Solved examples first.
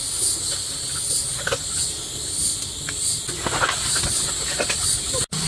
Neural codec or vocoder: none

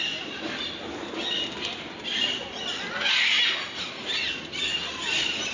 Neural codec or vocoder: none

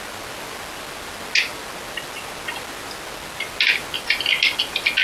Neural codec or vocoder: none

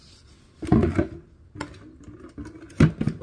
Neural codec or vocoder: none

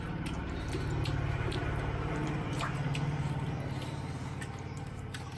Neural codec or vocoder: vocoder, BigVGAN v2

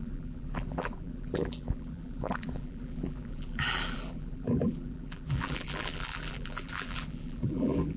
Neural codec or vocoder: vocoder, BigVGAN v2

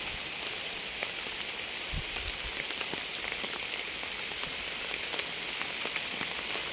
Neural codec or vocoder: none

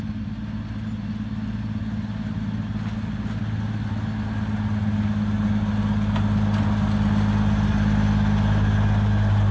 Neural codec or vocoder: none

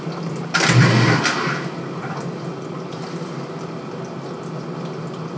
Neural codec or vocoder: none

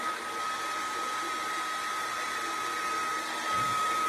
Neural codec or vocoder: none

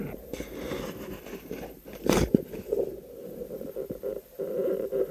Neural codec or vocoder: vocoder, BigVGAN v2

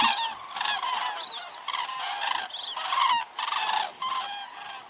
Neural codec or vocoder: none